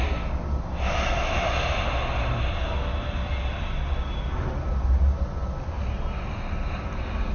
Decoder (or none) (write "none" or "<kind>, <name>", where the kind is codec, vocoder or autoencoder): none